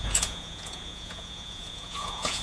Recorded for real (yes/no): no